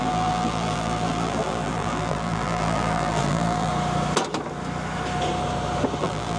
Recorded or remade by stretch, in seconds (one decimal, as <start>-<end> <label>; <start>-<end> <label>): 0.0-3.7 remade; 3.7-6.0 recorded; 6.0-6.4 remade